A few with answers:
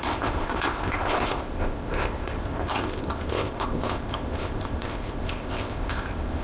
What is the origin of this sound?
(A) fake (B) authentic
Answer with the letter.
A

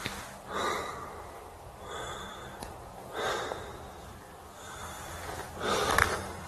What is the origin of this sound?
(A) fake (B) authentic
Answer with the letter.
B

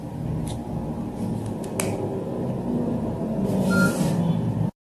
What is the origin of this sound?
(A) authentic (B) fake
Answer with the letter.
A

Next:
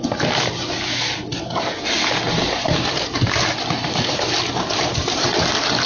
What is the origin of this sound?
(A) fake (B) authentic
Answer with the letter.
B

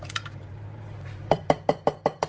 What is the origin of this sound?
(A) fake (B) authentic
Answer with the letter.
A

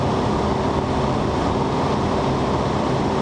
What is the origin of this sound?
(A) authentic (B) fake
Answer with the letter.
A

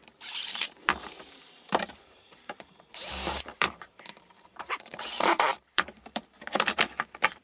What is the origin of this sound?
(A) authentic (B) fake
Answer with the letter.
B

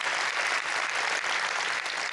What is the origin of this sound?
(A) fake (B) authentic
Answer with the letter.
B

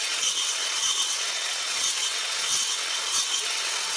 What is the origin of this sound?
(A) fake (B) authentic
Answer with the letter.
A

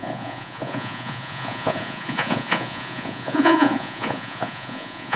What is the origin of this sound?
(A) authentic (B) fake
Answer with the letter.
B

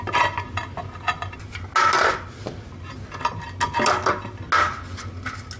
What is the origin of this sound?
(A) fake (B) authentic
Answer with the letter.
B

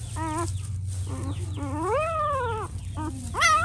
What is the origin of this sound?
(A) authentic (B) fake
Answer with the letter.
A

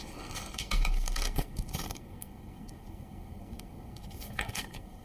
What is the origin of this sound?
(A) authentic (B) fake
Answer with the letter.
B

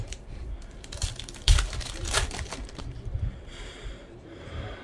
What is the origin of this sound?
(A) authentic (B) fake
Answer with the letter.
B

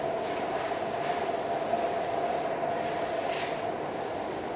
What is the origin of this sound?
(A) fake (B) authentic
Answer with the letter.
B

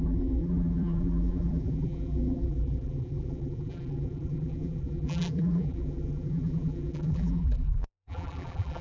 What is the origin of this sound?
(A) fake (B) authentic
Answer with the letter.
A